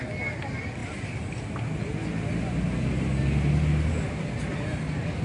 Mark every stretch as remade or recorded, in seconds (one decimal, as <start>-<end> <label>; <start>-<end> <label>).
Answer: 0.0-5.2 recorded